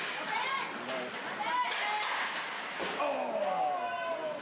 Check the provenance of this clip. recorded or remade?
recorded